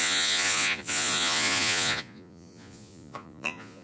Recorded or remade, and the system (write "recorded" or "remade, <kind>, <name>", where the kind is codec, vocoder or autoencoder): remade, vocoder, Vocos